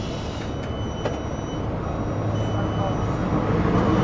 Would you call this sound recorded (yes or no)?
yes